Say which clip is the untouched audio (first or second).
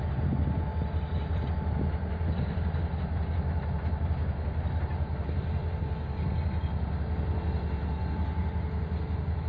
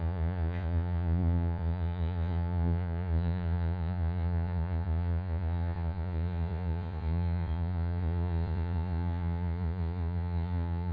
first